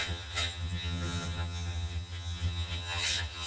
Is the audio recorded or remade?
remade